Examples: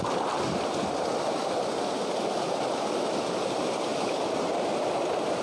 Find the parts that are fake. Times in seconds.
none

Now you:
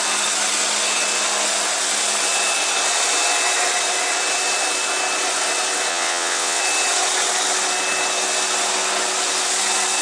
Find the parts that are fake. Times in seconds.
5.9-6.6

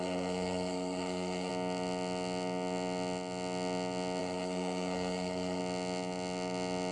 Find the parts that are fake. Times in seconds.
0.0-1.5; 4.2-5.6